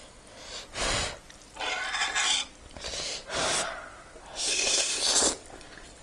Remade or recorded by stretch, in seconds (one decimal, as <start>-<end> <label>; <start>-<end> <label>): 0.0-4.5 recorded; 4.5-5.0 remade; 5.0-6.0 recorded